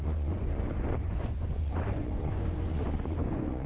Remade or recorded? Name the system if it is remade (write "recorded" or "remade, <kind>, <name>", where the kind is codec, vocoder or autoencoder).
remade, vocoder, Vocos